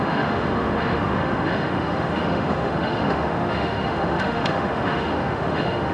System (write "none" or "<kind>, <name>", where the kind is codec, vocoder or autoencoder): autoencoder, DAC-VAE